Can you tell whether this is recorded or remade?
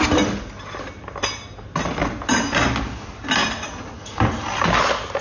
recorded